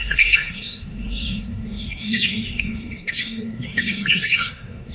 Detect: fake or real fake